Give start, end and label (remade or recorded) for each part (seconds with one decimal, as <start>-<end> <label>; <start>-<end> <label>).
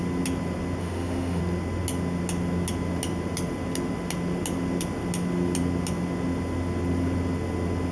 0.0-0.8 recorded; 0.8-1.4 remade; 1.4-7.9 recorded